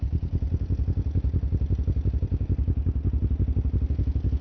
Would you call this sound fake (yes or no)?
no